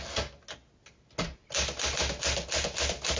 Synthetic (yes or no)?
no